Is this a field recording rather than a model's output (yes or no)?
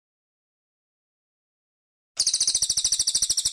yes